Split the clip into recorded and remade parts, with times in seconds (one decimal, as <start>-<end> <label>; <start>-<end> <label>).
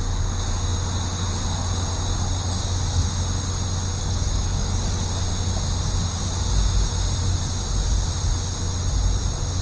0.0-4.0 recorded; 4.0-5.1 remade; 5.1-9.6 recorded